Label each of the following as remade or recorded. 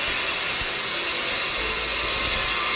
recorded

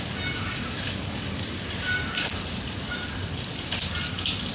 recorded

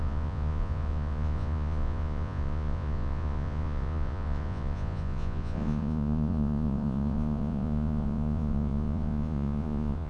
remade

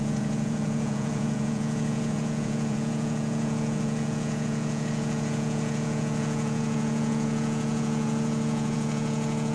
remade